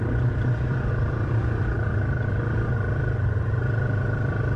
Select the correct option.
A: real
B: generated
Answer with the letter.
B